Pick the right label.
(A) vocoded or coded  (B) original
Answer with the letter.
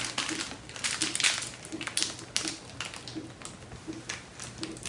B